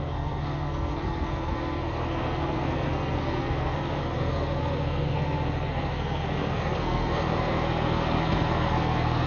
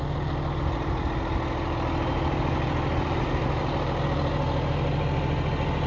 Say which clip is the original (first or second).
second